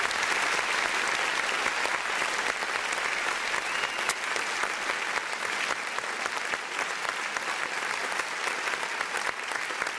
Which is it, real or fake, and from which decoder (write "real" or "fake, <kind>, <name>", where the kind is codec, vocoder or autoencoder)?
real